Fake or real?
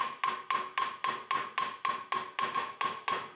real